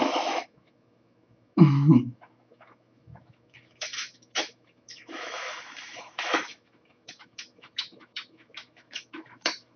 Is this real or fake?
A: fake